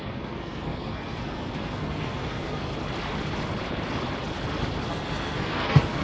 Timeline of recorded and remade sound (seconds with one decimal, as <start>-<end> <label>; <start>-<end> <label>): 0.0-2.7 remade; 2.7-4.9 recorded; 4.9-6.0 remade